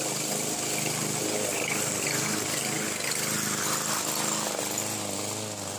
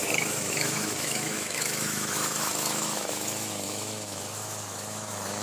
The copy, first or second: second